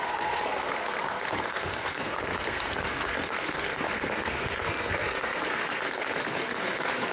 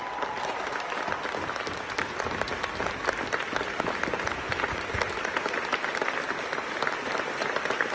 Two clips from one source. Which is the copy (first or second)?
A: first